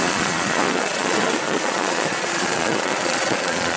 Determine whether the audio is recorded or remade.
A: remade